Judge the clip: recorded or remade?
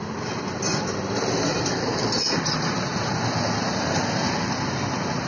recorded